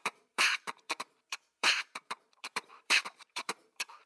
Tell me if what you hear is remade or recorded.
remade